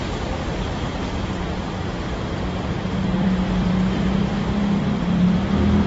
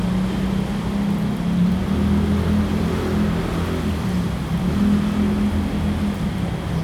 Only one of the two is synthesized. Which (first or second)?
first